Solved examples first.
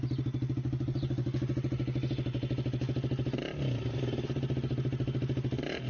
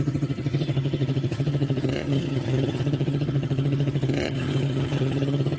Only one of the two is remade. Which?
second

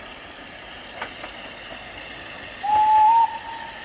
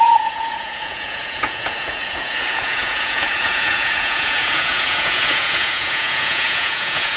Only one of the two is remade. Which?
second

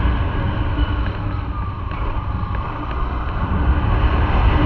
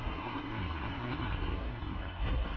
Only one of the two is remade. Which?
second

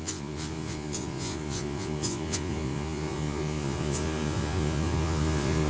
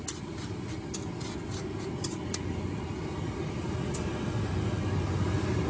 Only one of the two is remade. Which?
first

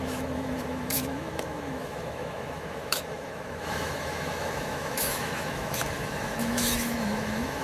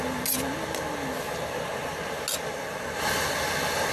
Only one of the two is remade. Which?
first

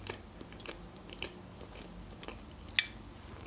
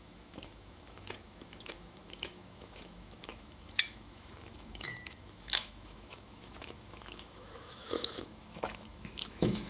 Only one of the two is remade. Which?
second